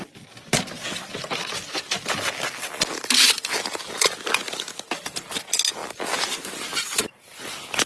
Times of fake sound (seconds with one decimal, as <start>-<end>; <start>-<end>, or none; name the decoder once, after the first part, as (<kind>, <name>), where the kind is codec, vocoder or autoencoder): none